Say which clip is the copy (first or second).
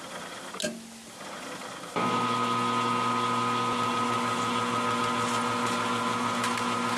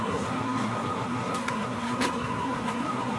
second